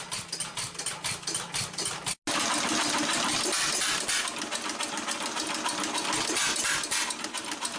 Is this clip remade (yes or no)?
no